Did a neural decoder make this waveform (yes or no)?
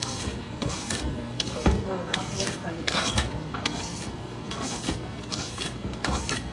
yes